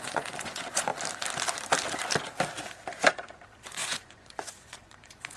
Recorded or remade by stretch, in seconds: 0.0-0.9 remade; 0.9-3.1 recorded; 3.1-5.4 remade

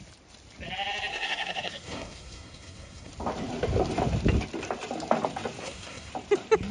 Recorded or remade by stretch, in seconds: 0.0-1.1 recorded; 1.1-3.1 remade; 3.1-5.6 recorded; 5.6-6.1 remade; 6.1-6.7 recorded

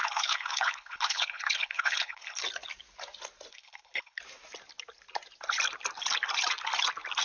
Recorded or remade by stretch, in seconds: 0.0-2.4 remade; 2.4-3.5 recorded; 3.5-4.2 remade; 4.2-7.2 recorded

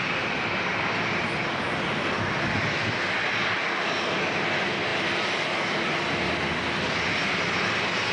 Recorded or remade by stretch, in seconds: 0.0-8.1 recorded

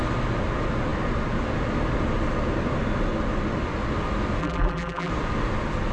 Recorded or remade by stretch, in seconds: 0.0-4.4 recorded; 4.4-5.1 remade; 5.1-5.9 recorded

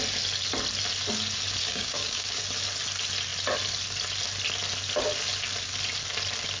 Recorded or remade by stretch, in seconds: 0.0-1.6 recorded; 1.6-2.4 remade; 2.4-6.6 recorded

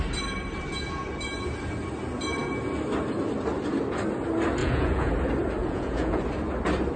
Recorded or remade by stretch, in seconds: 0.0-4.6 recorded; 4.6-5.1 remade; 5.1-5.6 recorded; 5.6-6.2 remade; 6.2-7.0 recorded

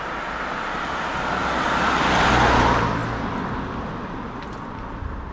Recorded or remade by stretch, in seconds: 0.0-5.3 recorded